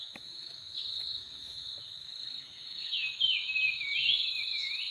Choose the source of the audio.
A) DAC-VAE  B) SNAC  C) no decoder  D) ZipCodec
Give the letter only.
A